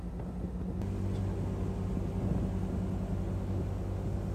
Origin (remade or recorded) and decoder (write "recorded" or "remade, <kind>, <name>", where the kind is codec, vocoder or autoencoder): recorded